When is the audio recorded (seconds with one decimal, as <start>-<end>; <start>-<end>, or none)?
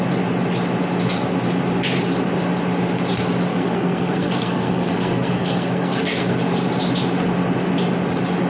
0.0-3.5; 6.4-8.5